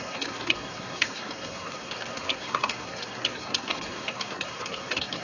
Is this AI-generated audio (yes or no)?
yes